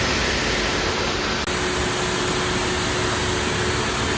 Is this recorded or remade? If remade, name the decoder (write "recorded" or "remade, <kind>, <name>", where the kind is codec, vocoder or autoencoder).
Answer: recorded